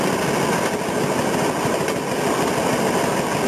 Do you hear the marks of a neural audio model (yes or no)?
no